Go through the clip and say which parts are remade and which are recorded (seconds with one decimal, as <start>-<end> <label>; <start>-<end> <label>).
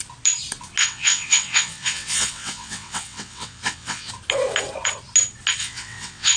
0.0-0.8 recorded; 0.8-4.1 remade; 4.1-5.6 recorded; 5.6-6.4 remade